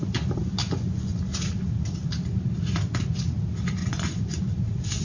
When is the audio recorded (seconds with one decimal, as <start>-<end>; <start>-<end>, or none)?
0.0-0.6; 1.2-3.8; 4.4-5.0